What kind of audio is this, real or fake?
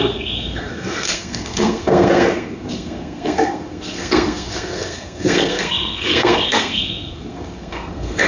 fake